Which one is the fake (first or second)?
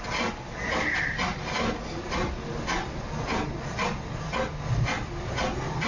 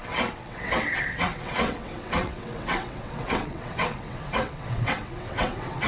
second